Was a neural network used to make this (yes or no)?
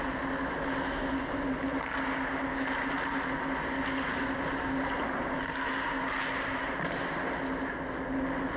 no